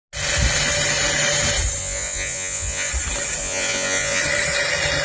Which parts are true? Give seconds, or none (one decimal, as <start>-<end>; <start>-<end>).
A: 0.0-1.8; 2.9-3.4; 4.2-5.0